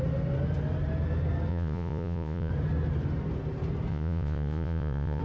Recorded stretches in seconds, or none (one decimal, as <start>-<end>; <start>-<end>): 0.0-1.5; 2.5-3.9

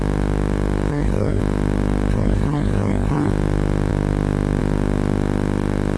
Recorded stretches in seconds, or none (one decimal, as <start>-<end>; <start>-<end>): 0.0-0.9; 1.4-2.1; 3.3-6.0

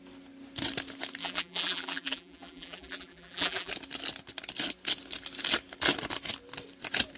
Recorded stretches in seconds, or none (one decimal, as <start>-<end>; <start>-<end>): 0.0-1.2; 3.7-7.2

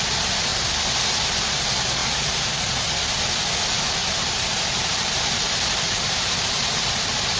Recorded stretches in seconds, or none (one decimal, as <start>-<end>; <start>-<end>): 0.0-0.5; 1.0-2.0; 2.6-4.0; 6.8-7.4

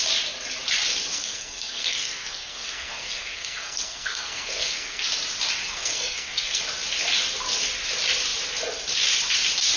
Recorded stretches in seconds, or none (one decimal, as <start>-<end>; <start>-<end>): 0.0-1.1; 5.1-5.6; 6.6-9.8